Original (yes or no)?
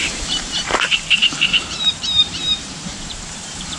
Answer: no